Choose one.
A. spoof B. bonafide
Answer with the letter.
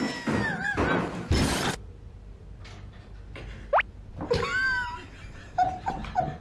B